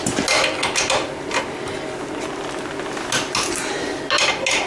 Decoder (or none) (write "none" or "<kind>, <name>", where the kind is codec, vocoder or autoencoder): none